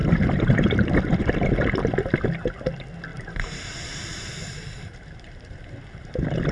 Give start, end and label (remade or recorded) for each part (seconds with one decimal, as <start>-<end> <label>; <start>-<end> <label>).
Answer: 0.0-3.1 recorded; 3.1-6.5 remade